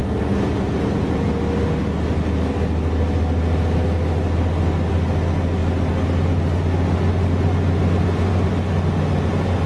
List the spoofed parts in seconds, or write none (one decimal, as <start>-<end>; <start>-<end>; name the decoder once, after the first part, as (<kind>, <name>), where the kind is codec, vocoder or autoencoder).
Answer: none